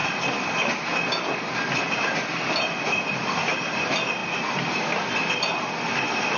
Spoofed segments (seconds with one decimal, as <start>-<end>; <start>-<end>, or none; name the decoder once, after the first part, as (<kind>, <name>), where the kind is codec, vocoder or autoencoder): none